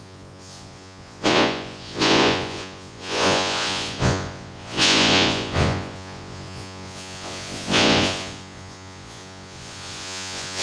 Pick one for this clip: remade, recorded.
remade